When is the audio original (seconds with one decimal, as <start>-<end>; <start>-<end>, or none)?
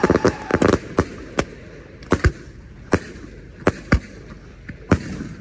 0.0-5.4